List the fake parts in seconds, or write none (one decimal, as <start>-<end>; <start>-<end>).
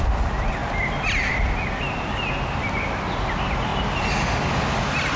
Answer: none